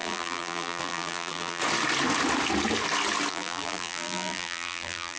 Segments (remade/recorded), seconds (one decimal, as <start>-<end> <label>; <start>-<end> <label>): 0.0-1.6 remade; 1.6-3.3 recorded; 3.3-5.2 remade